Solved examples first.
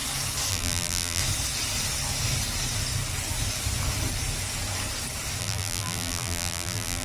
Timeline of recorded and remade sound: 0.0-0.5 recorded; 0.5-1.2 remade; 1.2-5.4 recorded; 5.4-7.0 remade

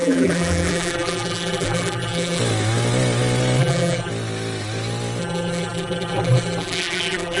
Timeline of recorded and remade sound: 0.0-2.4 remade; 2.4-3.6 recorded; 3.6-4.1 remade; 4.1-5.2 recorded; 5.2-7.4 remade